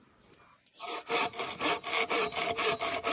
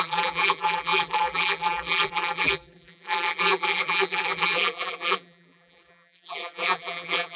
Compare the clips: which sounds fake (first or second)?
second